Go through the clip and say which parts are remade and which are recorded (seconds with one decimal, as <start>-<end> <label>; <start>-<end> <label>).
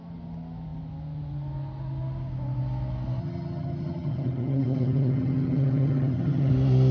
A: 0.0-3.2 recorded; 3.2-6.5 remade; 6.5-6.9 recorded